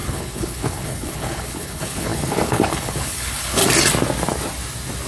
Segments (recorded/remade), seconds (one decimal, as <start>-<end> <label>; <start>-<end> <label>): 0.0-3.6 remade; 3.6-5.1 recorded